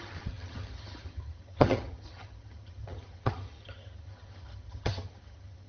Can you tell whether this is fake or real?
fake